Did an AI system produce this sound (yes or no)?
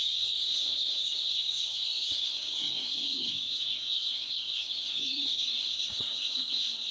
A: yes